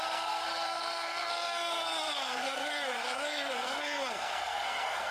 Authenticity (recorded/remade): remade